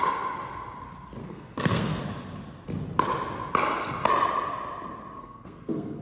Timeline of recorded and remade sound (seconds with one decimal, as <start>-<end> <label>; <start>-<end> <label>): 0.0-1.2 recorded; 1.2-2.0 remade; 2.0-5.2 recorded; 5.2-6.0 remade